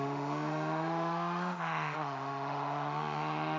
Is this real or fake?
fake